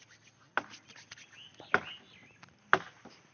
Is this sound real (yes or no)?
yes